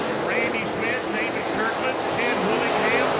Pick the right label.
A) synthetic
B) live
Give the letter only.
B